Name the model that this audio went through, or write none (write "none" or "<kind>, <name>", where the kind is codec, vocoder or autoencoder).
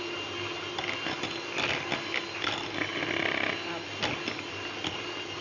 none